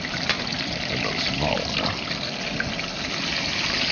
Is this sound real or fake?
real